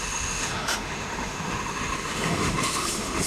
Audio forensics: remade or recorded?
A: remade